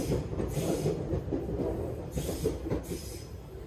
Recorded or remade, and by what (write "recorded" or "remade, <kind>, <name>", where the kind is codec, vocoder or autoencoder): recorded